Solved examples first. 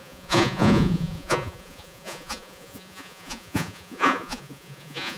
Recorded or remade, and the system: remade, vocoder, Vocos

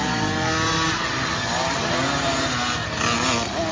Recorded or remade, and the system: recorded